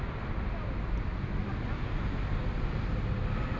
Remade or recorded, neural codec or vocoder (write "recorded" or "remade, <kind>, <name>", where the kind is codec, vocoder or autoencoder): recorded